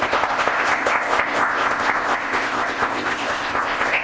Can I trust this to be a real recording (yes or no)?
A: no